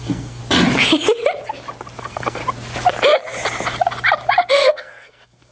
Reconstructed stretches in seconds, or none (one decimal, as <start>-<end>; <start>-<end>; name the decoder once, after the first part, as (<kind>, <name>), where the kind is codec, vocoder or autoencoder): 0.0-0.4 (codec, SNAC); 2.0-2.4; 4.5-5.5